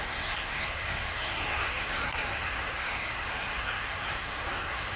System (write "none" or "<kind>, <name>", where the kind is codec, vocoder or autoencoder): codec, SNAC